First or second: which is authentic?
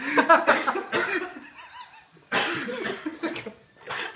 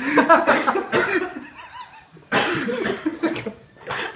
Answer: first